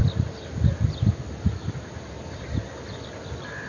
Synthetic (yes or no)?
no